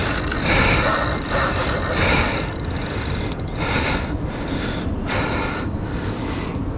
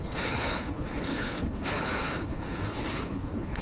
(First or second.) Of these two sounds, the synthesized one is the second